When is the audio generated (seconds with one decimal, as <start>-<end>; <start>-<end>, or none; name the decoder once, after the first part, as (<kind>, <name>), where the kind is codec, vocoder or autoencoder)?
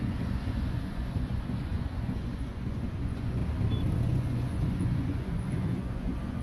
0.0-3.4 (vocoder, Vocos); 4.0-6.4